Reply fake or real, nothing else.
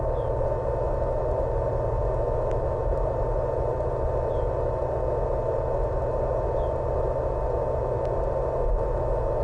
real